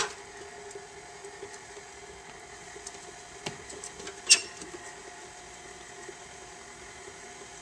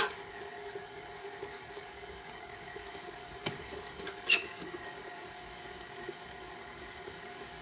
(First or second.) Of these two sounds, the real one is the first